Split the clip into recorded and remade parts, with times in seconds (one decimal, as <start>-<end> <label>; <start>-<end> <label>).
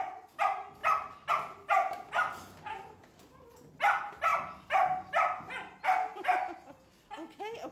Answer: 0.0-7.7 recorded